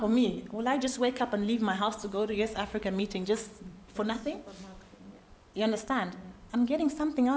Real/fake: fake